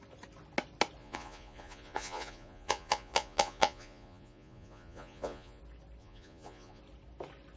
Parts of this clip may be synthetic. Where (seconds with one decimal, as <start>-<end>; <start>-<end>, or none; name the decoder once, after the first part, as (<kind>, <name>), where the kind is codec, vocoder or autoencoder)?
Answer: 1.0-5.6 (vocoder, Vocos); 6.0-6.8

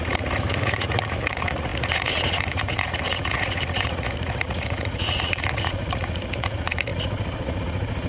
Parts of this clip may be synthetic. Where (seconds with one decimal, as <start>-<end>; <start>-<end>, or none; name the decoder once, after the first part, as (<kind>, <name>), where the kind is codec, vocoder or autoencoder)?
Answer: 0.0-8.1 (vocoder, Vocos)

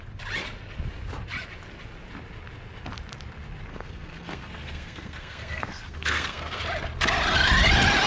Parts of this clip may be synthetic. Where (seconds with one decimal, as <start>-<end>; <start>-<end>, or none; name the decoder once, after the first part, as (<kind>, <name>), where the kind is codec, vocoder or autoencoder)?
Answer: 3.7-6.6 (codec, SNAC)

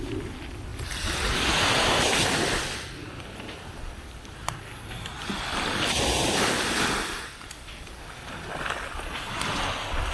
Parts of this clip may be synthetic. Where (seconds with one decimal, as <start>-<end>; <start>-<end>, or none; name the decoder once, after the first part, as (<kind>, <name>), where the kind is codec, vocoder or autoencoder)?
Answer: none